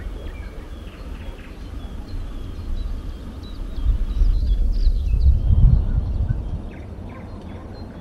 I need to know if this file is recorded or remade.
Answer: recorded